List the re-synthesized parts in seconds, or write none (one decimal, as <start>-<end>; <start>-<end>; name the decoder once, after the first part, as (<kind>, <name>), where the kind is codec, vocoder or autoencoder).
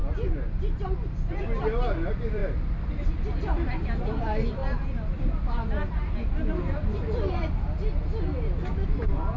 1.3-2.4 (vocoder, BigVGAN v2); 2.9-8.1; 8.9-9.4